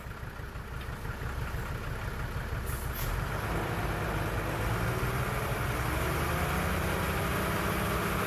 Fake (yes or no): no